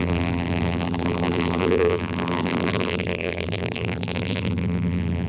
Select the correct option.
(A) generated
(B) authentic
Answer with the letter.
A